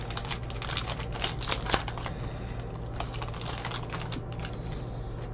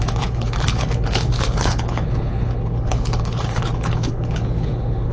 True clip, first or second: first